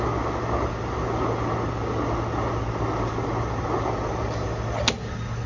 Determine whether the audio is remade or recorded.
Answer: recorded